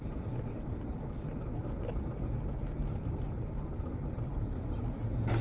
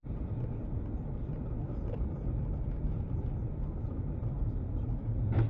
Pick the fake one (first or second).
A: second